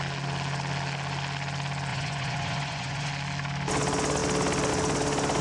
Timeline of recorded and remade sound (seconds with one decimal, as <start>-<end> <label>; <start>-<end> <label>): 0.0-1.9 recorded; 1.9-3.1 remade; 3.1-5.4 recorded